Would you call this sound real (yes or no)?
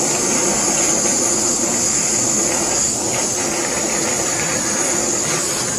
yes